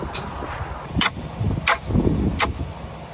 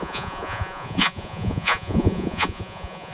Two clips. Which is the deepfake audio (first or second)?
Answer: second